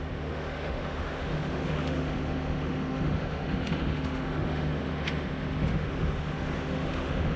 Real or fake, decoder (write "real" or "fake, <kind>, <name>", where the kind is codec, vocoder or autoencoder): fake, autoencoder, DAC-VAE